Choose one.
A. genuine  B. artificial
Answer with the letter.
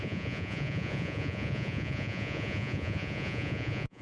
B